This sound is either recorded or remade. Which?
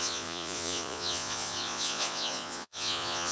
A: remade